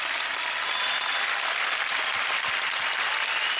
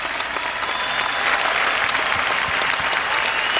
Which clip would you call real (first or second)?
second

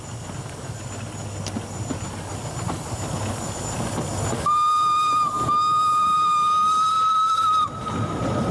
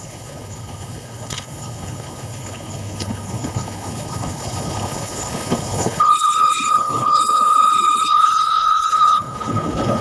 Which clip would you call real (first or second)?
first